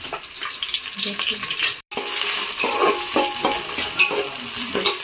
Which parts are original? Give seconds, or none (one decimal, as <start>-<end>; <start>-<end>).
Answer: 0.0-5.0